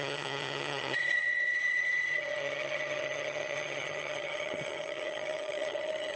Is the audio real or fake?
fake